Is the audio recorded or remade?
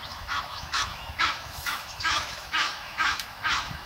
remade